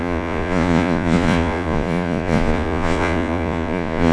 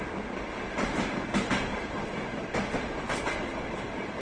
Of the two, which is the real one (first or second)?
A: second